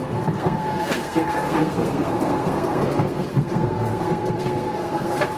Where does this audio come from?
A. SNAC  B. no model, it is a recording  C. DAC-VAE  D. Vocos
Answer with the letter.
A